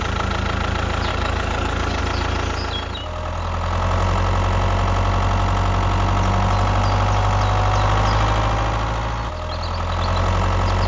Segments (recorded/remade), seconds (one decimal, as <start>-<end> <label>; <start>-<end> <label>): 0.0-1.1 recorded; 1.1-2.0 remade; 2.0-10.9 recorded